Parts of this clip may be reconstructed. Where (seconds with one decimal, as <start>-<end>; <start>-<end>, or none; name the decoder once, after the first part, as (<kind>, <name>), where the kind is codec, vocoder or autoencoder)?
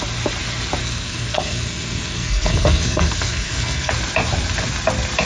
0.8-3.9 (codec, SNAC)